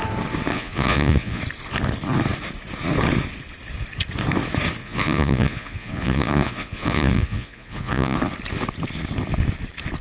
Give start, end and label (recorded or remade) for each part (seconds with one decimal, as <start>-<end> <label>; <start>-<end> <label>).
0.0-0.5 recorded; 0.5-1.4 remade; 1.4-4.8 recorded; 4.8-8.2 remade; 8.2-10.0 recorded